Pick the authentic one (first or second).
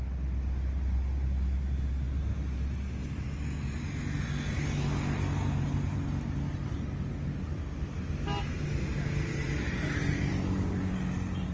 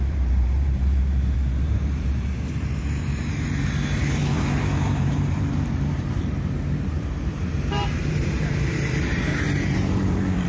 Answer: first